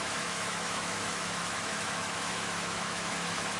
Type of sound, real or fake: fake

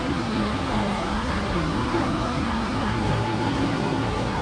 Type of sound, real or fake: fake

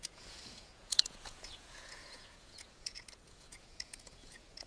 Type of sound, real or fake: fake